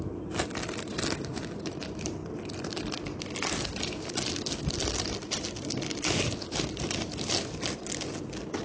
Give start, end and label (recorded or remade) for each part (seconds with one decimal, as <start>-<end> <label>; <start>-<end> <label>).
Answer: 0.0-8.6 recorded